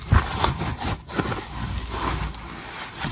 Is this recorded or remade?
recorded